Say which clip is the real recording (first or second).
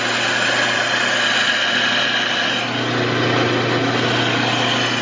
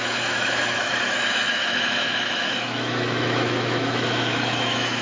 first